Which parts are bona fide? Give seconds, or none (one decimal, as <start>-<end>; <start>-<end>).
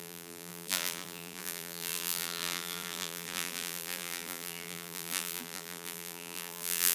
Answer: none